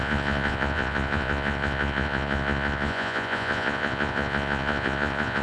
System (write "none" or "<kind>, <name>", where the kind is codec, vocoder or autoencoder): vocoder, Vocos